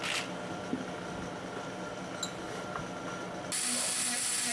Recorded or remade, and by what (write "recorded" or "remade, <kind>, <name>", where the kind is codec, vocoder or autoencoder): recorded